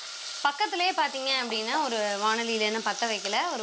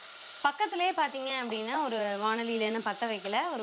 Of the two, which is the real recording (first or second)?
first